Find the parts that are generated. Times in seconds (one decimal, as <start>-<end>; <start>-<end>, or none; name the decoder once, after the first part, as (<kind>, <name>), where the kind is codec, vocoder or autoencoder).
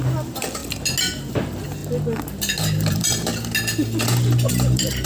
0.0-0.6 (vocoder, BigVGAN v2); 1.3-1.8; 2.9-3.3; 4.5-5.1